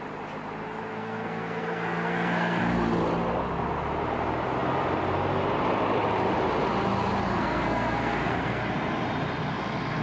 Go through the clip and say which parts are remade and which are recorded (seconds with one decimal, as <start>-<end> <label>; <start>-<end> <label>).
0.0-0.9 recorded; 0.9-2.6 remade; 2.6-7.3 recorded; 7.3-8.6 remade; 8.6-10.0 recorded